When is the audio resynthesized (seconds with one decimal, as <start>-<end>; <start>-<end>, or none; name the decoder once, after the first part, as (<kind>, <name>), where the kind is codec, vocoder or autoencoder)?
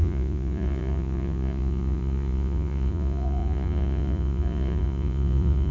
0.0-5.7 (vocoder, Vocos)